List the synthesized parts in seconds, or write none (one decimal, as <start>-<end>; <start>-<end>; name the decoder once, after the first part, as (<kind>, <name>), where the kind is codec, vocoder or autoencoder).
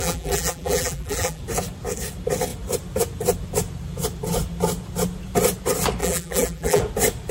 0.0-1.4 (vocoder, BigVGAN v2); 6.0-6.8